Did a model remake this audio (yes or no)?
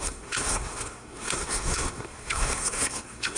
yes